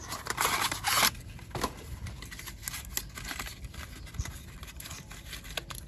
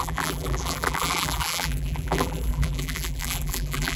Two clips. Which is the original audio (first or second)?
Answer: first